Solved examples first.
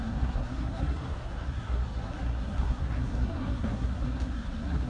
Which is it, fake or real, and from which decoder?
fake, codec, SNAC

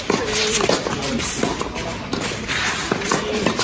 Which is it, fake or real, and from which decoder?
real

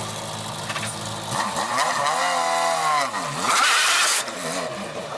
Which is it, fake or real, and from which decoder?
real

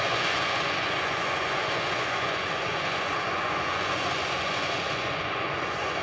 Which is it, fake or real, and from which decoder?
fake, vocoder, Vocos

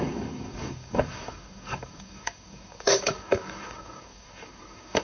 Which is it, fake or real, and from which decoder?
fake, codec, DAC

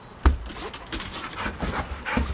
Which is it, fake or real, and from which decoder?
real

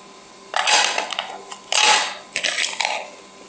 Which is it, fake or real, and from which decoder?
real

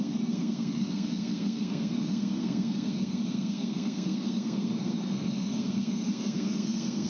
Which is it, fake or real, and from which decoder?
fake, codec, SNAC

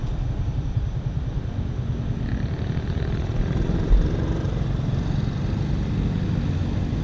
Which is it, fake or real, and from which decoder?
real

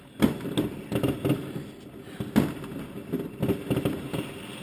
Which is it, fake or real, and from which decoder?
real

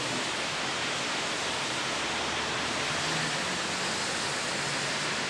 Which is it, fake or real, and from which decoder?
real